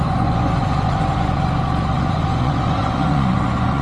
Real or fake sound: fake